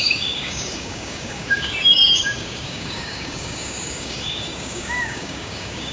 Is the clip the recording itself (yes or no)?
no